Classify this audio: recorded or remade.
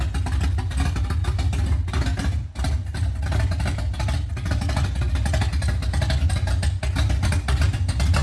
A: recorded